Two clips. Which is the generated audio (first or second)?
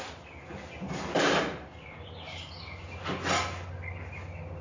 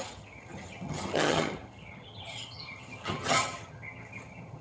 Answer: second